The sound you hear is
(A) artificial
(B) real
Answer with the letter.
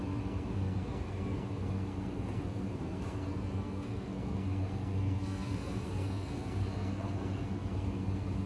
A